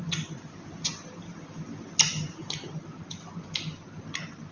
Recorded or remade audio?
recorded